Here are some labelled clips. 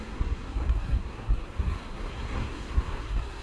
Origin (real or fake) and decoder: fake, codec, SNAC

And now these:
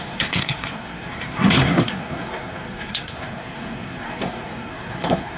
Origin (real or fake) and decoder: fake, codec, SNAC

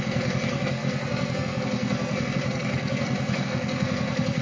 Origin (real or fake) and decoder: fake, codec, SNAC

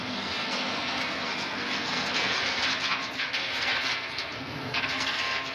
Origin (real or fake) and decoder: fake, codec, SNAC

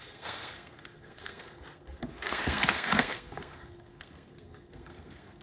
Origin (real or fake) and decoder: fake, codec, SNAC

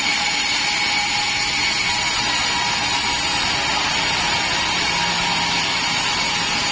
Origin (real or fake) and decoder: real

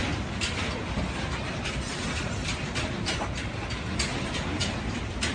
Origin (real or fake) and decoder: real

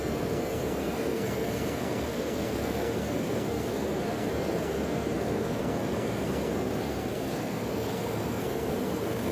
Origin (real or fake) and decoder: fake, codec, SNAC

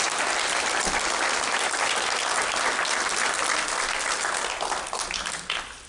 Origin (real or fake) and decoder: real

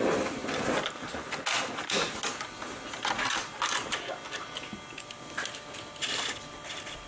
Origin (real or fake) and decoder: real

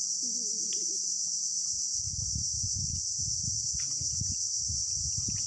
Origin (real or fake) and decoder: real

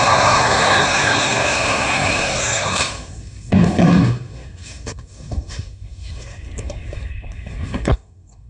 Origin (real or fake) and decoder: fake, codec, SNAC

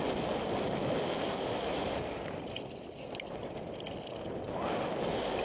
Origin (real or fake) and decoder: real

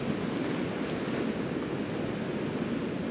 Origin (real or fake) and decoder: real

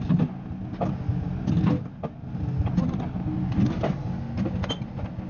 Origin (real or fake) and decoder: real